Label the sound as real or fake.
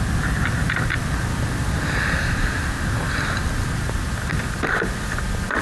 real